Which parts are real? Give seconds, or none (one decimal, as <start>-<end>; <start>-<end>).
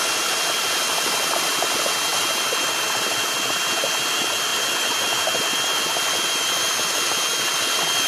0.0-8.1